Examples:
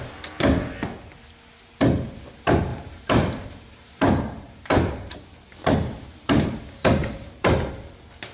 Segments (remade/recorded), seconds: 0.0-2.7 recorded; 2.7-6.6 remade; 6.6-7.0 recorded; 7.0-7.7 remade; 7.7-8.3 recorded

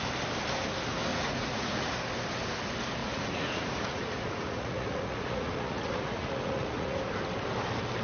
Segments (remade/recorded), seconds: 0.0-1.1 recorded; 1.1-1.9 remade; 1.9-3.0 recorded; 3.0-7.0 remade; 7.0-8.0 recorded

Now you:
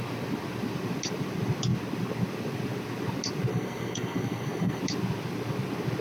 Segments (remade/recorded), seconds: 0.0-3.5 recorded; 3.5-4.8 remade; 4.8-6.0 recorded

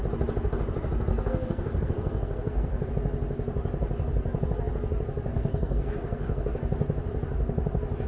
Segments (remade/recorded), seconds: 0.0-1.1 recorded; 1.1-2.9 remade; 2.9-5.3 recorded; 5.3-6.6 remade; 6.6-8.1 recorded